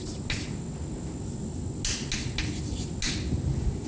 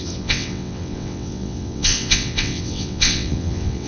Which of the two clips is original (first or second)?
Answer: first